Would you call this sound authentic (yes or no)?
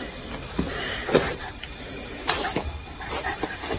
no